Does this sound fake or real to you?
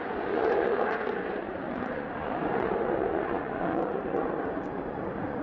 fake